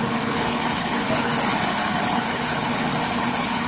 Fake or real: fake